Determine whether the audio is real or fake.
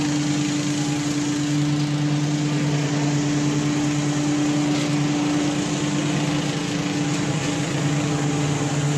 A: real